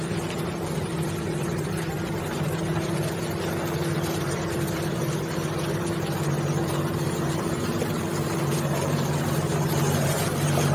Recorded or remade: remade